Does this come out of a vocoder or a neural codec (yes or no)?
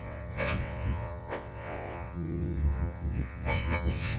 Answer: yes